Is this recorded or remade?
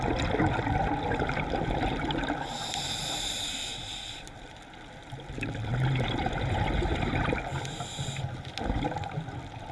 recorded